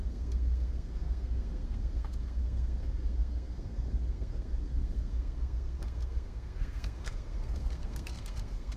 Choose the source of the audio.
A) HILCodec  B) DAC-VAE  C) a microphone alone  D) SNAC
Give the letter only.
D